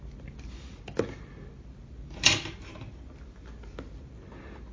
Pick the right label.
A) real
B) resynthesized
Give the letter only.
A